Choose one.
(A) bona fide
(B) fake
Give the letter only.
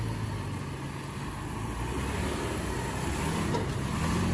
A